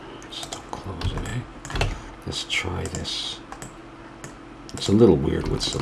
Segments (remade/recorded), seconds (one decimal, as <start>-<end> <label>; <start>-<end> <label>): 0.0-5.8 recorded